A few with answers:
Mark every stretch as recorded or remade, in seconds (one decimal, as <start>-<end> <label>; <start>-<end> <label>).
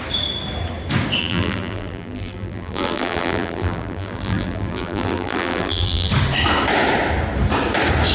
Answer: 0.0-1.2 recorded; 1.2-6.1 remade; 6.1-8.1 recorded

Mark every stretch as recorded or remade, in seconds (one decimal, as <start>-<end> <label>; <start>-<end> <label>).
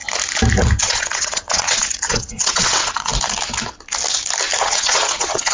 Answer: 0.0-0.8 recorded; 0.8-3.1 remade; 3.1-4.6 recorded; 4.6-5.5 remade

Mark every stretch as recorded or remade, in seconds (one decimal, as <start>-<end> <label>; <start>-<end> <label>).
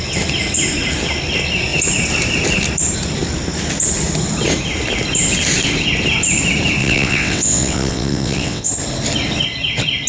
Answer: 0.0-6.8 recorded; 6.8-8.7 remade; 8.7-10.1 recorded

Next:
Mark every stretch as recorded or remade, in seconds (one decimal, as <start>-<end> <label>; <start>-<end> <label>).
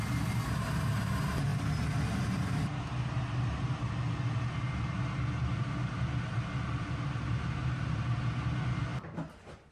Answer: 0.0-9.7 recorded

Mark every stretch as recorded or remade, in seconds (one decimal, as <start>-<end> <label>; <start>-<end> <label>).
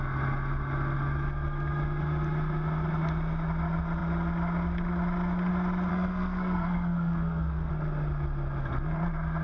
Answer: 0.0-5.9 recorded; 5.9-7.7 remade; 7.7-9.4 recorded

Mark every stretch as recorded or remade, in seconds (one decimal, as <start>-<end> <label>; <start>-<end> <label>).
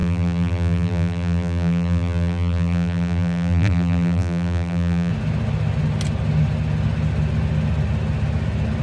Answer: 0.0-5.1 remade; 5.1-8.8 recorded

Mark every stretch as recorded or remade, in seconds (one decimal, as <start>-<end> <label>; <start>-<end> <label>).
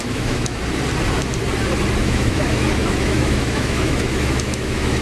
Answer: 0.0-0.6 remade; 0.6-2.0 recorded; 2.0-5.0 remade